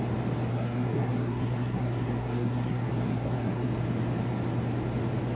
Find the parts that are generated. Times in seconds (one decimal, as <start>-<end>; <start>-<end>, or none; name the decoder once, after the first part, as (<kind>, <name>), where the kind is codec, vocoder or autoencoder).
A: 0.5-3.7 (codec, SNAC)